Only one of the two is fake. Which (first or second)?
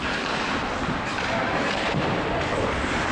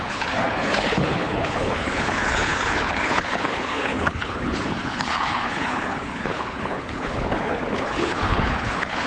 second